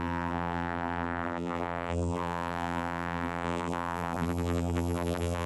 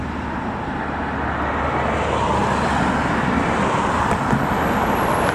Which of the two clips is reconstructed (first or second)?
first